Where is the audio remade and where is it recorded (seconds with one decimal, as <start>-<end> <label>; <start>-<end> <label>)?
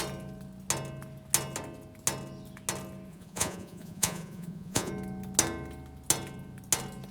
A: 0.0-3.1 recorded; 3.1-4.9 remade; 4.9-7.1 recorded